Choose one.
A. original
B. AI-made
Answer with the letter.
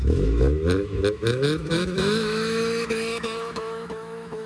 B